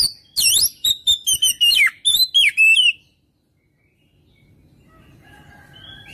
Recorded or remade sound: recorded